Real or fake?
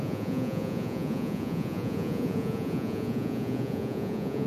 fake